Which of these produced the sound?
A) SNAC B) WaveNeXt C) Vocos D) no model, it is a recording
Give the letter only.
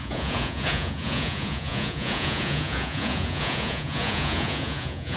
C